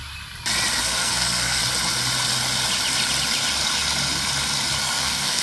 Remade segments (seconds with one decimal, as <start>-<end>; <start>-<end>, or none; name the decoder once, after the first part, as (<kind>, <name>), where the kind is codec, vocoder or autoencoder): 0.8-1.6 (codec, SNAC); 4.8-5.4